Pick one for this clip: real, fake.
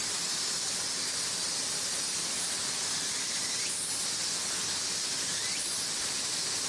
real